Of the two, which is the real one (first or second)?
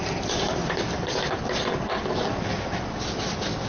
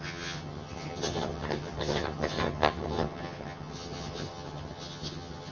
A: first